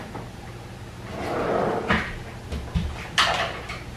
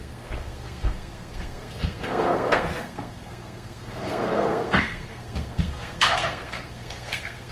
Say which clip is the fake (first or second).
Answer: second